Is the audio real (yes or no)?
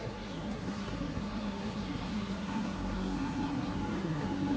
no